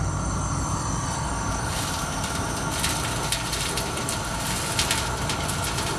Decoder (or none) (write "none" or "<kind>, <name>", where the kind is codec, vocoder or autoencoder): none